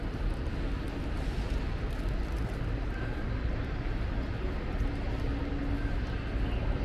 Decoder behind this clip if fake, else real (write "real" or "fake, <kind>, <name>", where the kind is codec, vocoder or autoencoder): real